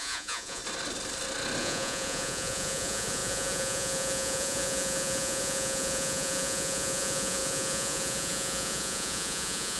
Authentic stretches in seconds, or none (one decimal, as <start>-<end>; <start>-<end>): 0.6-1.6